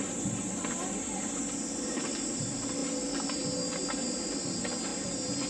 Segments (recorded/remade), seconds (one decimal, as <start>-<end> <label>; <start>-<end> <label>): 0.0-5.5 recorded